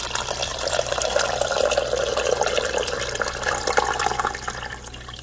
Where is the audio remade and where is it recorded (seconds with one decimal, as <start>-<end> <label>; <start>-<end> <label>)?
0.0-0.5 recorded; 0.5-3.6 remade; 3.6-5.2 recorded